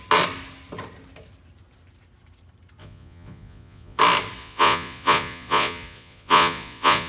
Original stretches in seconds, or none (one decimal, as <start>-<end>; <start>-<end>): 0.0-2.8; 4.0-4.4